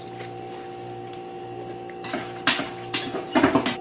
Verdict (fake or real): real